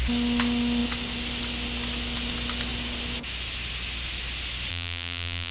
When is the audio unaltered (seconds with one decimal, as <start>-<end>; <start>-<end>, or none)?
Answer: 0.0-4.7